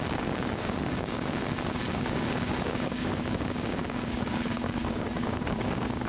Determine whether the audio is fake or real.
fake